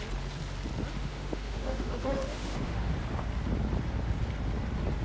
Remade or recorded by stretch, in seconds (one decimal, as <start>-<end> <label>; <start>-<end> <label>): 0.0-1.0 recorded; 1.0-2.9 remade; 2.9-5.0 recorded

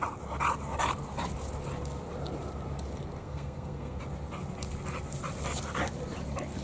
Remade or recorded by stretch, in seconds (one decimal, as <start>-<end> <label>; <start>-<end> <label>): 0.0-3.2 recorded; 3.2-4.0 remade; 4.0-6.6 recorded

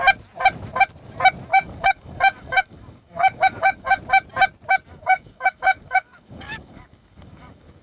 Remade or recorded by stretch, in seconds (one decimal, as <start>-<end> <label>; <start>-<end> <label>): 0.0-1.5 recorded; 1.5-4.0 remade; 4.0-4.9 recorded; 4.9-7.8 remade

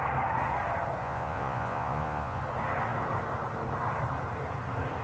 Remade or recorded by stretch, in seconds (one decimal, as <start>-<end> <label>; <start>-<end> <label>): 0.0-1.0 recorded; 1.0-2.4 remade; 2.4-5.0 recorded

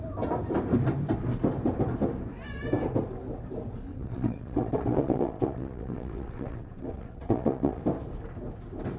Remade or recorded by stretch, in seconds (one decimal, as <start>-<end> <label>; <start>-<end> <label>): 0.0-3.9 recorded; 3.9-7.8 remade; 7.8-9.0 recorded

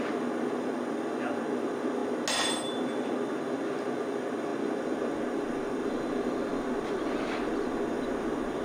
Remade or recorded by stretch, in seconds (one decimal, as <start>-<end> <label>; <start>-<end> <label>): 0.0-8.6 recorded

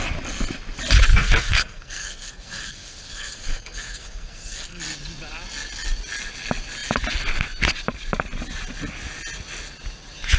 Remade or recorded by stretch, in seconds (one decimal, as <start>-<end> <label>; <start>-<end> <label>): 0.0-1.1 recorded; 1.1-4.8 remade; 4.8-10.4 recorded